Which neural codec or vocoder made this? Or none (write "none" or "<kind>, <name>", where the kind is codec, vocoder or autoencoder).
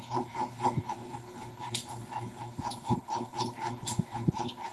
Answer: codec, HILCodec